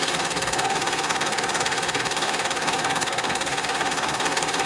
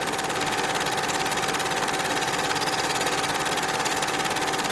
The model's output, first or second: first